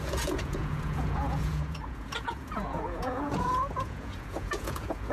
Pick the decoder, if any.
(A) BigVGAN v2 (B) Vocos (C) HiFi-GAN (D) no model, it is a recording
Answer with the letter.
B